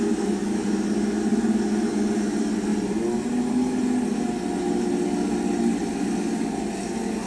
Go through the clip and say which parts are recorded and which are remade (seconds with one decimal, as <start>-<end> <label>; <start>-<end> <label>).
0.0-7.3 recorded